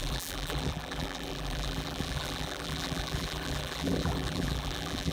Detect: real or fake fake